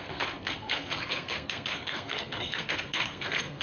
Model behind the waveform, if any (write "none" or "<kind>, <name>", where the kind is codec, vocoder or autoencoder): codec, SNAC